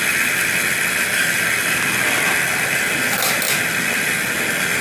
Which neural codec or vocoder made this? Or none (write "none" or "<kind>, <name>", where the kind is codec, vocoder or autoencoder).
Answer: none